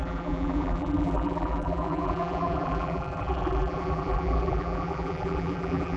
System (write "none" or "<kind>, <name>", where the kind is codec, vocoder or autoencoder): vocoder, BigVGAN v2